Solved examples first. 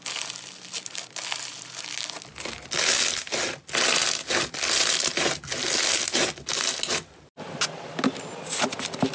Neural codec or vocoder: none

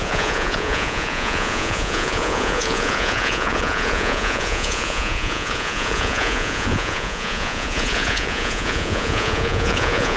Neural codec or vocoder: vocoder, Vocos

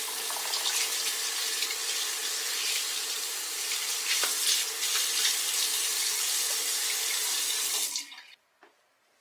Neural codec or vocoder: none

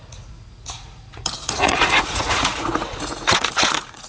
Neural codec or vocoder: vocoder, Vocos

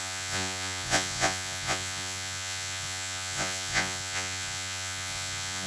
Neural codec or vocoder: vocoder, Vocos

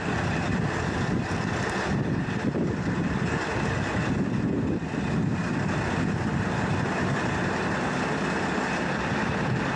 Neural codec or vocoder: none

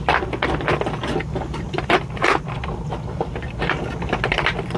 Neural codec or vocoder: none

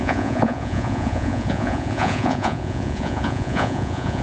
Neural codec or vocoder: vocoder, Vocos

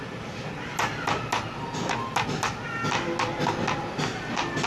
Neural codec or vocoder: none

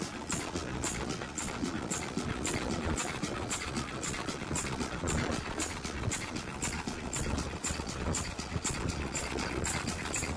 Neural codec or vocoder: vocoder, Vocos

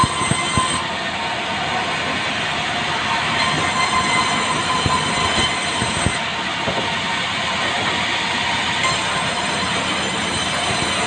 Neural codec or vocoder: none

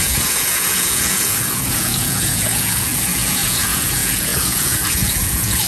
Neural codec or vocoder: vocoder, Vocos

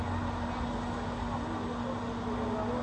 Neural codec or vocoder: none